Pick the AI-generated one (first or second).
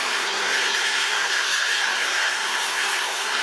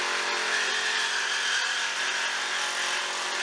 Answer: first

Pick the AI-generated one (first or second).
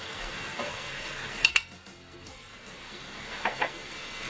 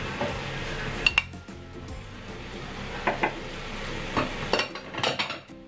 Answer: first